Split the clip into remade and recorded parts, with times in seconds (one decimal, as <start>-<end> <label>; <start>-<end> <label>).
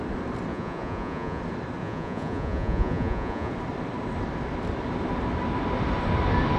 0.0-0.5 recorded; 0.5-1.4 remade; 1.4-1.8 recorded; 1.8-3.5 remade; 3.5-6.6 recorded